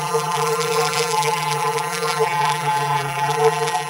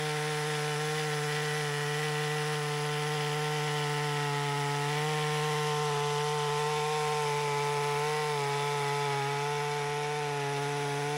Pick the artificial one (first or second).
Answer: first